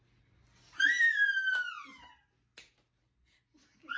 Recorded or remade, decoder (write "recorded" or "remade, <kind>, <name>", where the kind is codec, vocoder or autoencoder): recorded